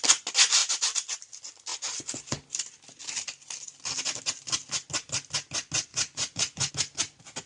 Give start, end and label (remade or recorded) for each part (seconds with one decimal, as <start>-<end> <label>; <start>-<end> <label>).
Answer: 0.0-5.9 recorded; 5.9-6.7 remade; 6.7-7.5 recorded